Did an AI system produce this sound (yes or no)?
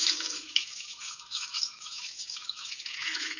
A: yes